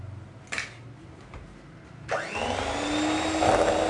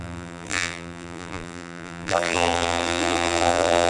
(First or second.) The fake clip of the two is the second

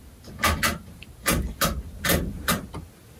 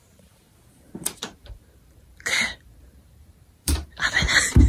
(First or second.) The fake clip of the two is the second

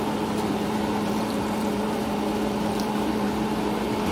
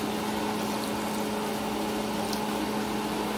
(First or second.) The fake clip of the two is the first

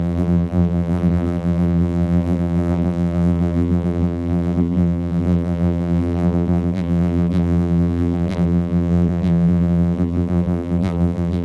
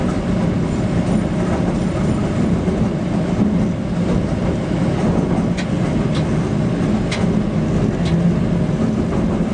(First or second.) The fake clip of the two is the first